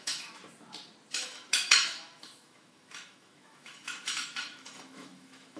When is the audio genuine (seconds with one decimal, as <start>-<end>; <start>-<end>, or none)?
0.4-1.1